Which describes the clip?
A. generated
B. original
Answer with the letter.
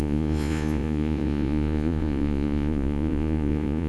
A